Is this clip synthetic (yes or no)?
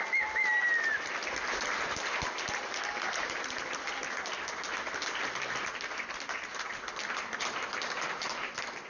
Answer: no